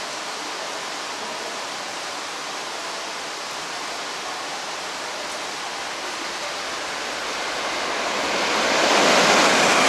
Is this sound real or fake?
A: real